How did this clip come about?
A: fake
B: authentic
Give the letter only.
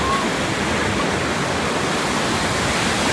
B